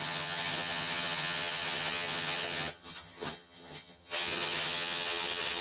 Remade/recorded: remade